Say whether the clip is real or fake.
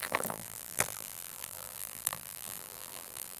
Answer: fake